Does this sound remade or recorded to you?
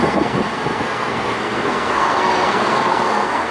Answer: remade